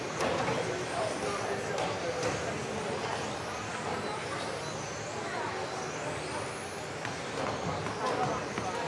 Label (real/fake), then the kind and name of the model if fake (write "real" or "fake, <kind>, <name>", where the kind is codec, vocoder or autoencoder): real